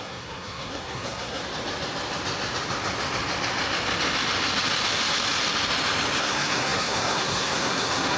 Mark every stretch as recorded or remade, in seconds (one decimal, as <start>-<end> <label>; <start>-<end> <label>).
0.0-1.4 remade; 1.4-6.2 recorded; 6.2-8.2 remade